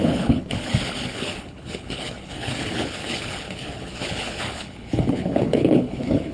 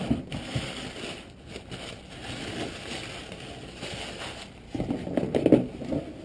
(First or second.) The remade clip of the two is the first